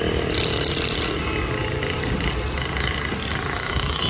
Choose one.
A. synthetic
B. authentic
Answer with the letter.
B